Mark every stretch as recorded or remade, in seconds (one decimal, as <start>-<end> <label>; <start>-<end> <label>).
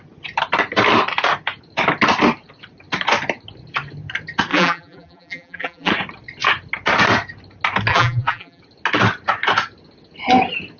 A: 0.0-4.5 recorded; 4.5-5.9 remade; 5.9-7.9 recorded; 7.9-8.6 remade; 8.6-10.8 recorded